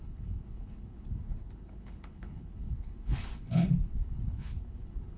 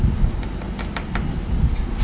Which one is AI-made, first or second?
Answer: first